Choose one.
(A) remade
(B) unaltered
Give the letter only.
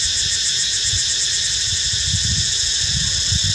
B